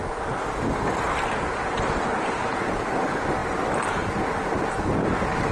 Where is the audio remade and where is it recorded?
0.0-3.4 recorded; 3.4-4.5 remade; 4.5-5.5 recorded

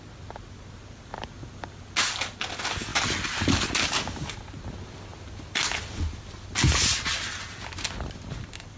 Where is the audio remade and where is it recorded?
0.0-8.8 recorded

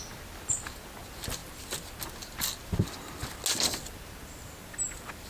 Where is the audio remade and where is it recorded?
0.0-5.3 recorded